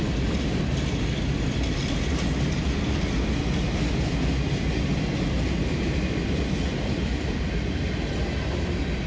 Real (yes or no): yes